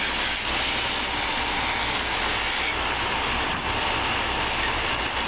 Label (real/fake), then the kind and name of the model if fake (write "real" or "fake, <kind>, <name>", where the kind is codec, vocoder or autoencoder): real